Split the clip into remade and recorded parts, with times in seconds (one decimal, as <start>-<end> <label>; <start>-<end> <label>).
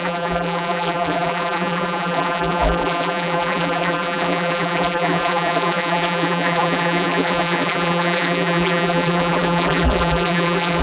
0.0-10.8 remade